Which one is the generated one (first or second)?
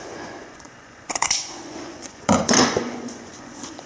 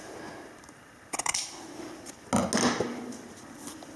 first